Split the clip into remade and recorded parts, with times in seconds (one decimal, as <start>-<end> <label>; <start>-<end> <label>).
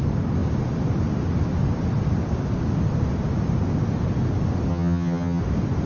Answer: 0.0-4.7 recorded; 4.7-5.4 remade; 5.4-5.9 recorded